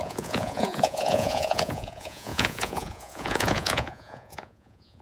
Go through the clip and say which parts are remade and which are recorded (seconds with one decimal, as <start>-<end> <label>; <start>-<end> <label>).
0.0-5.0 remade